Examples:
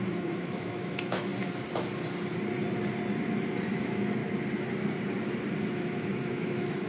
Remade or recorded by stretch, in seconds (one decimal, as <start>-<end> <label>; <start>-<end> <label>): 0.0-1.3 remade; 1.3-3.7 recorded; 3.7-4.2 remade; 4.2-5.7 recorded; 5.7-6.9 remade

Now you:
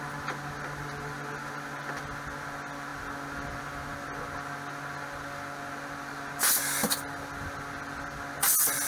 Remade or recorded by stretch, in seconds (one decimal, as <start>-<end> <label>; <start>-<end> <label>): 0.0-8.9 recorded

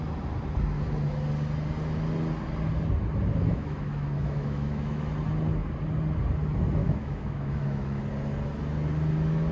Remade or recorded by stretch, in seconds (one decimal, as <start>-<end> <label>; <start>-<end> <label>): 0.0-3.5 recorded; 3.5-5.1 remade; 5.1-6.8 recorded; 6.8-8.0 remade; 8.0-9.5 recorded

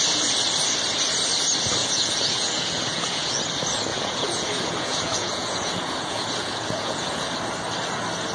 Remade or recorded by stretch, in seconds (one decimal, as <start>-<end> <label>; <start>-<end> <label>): 0.0-1.8 recorded; 1.8-3.3 remade; 3.3-3.9 recorded; 3.9-7.3 remade; 7.3-8.3 recorded

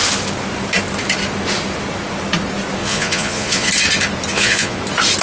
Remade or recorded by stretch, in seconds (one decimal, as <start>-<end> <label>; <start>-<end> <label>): 0.0-2.8 recorded; 2.8-3.7 remade; 3.7-4.3 recorded; 4.3-4.8 remade; 4.8-5.2 recorded

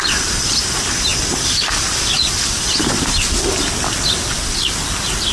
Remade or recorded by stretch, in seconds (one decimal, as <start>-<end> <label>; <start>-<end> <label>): 0.0-5.3 recorded